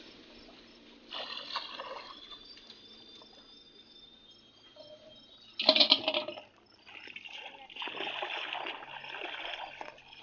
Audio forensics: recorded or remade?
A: recorded